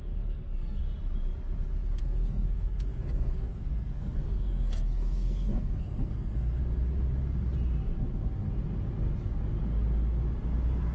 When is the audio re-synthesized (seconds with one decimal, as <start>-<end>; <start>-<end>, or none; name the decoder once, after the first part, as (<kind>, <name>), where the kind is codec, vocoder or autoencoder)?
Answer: 0.0-0.8 (codec, SNAC); 2.0-6.6